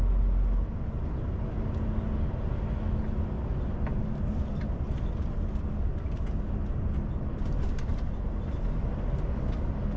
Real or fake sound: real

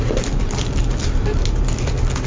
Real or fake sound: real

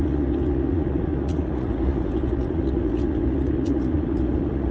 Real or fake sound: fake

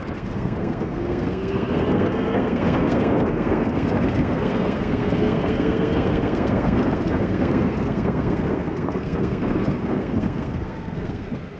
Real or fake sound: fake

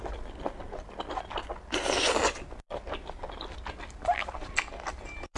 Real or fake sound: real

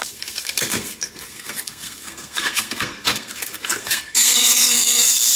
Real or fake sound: fake